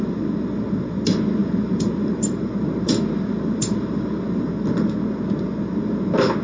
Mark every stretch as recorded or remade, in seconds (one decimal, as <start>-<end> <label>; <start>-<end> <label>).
0.0-1.4 recorded; 1.4-4.5 remade; 4.5-6.4 recorded